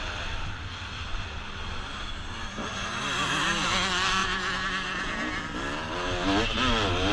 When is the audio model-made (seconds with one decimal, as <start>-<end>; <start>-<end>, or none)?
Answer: 4.2-5.3